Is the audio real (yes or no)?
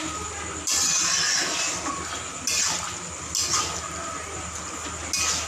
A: yes